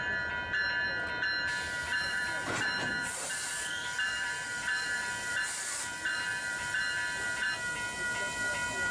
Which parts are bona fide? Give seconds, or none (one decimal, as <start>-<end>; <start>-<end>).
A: 0.0-1.9; 6.8-8.9